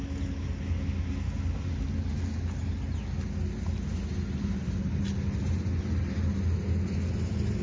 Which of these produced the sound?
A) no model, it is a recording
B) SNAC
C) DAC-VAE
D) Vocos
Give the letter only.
A